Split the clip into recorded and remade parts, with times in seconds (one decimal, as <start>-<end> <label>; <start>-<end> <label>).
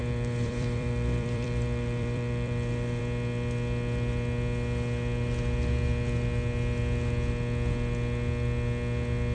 0.0-3.0 remade; 3.0-9.3 recorded